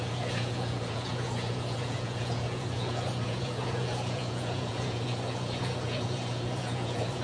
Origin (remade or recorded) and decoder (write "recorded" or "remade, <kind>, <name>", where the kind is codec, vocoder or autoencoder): remade, vocoder, Vocos